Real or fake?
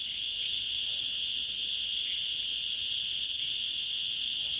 fake